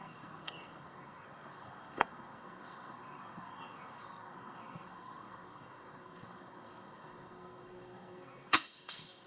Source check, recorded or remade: remade